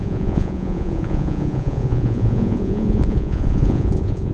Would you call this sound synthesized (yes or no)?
yes